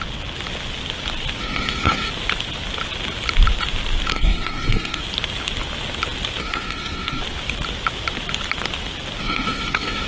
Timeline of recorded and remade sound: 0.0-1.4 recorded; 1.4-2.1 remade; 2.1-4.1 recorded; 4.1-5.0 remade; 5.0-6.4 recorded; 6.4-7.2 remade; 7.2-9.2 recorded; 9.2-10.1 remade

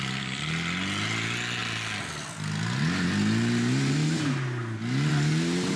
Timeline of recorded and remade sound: 0.0-5.8 recorded